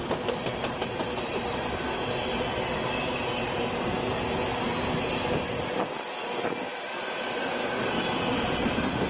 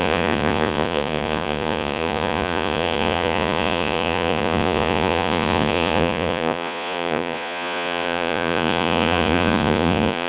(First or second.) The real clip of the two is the first